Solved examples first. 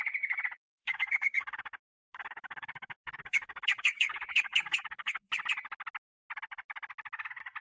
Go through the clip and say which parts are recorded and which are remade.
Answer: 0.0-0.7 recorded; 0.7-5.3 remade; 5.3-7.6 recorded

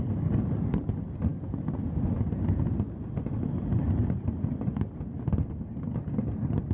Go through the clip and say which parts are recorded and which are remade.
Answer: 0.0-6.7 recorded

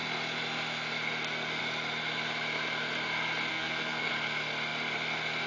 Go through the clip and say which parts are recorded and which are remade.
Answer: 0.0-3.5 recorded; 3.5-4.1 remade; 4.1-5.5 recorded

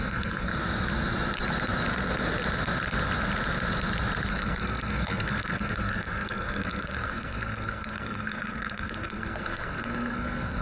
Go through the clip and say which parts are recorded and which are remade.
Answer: 0.0-0.5 remade; 0.5-4.3 recorded; 4.3-10.6 remade

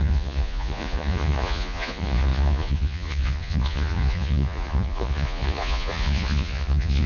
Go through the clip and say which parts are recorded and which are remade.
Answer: 0.0-7.1 remade